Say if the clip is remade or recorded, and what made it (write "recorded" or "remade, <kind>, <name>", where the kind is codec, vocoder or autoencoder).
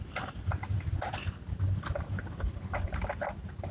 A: recorded